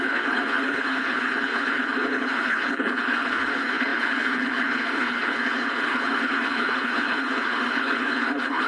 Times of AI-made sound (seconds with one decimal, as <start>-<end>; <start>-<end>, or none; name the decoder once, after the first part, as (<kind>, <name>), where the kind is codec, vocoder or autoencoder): 0.0-8.7 (codec, HILCodec)